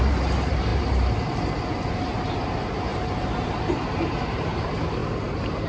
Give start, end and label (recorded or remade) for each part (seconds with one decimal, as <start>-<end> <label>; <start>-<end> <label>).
0.0-5.0 remade; 5.0-5.7 recorded